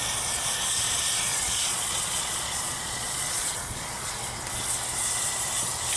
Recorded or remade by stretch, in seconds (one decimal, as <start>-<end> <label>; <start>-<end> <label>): 0.0-1.3 recorded; 1.3-4.1 remade; 4.1-6.0 recorded